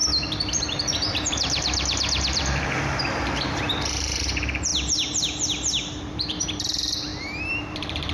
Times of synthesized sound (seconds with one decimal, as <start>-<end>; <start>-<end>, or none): 0.0-8.1